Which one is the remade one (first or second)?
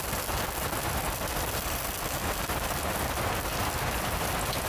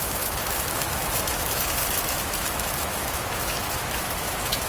second